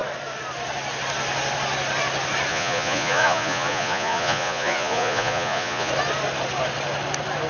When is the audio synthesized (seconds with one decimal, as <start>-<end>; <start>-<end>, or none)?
2.5-5.9